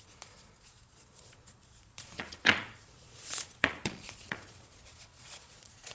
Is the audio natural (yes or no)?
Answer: no